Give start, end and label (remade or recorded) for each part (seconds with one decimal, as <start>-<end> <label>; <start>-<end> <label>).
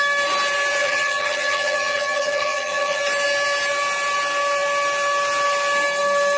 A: 0.0-0.8 recorded; 0.8-3.0 remade; 3.0-6.4 recorded